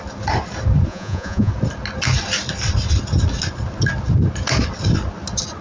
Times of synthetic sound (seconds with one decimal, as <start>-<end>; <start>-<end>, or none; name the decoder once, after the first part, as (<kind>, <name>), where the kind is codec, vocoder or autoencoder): 0.9-1.5 (vocoder, Vocos)